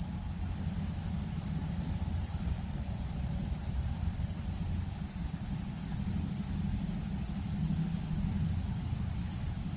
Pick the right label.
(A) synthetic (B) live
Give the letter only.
B